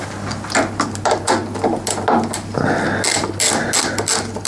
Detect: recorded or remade recorded